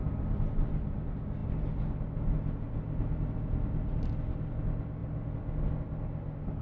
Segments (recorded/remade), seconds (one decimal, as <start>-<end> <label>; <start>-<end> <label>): 0.0-6.6 recorded